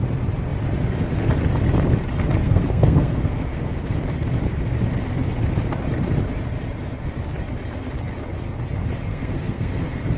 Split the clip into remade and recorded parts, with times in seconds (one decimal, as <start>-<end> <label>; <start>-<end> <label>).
0.0-2.4 recorded; 2.4-3.7 remade; 3.7-9.1 recorded; 9.1-10.2 remade